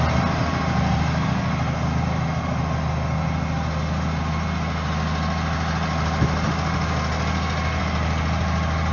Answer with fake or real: real